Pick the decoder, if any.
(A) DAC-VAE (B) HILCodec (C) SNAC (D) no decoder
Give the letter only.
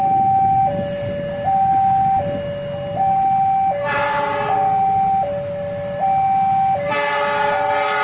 D